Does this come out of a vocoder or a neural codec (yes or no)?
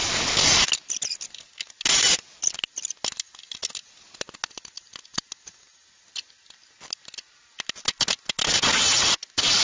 no